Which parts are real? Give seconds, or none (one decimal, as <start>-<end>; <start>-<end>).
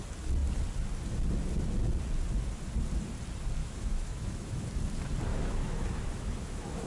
0.0-3.6; 4.7-5.3